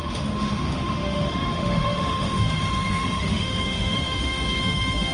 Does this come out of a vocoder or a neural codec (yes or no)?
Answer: yes